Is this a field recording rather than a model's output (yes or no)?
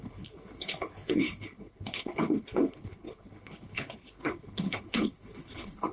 no